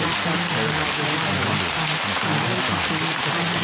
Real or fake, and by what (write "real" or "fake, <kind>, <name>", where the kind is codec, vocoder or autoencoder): real